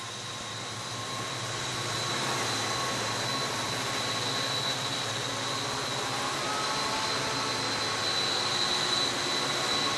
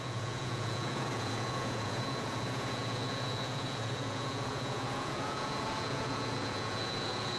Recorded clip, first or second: first